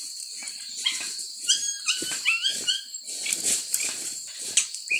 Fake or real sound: fake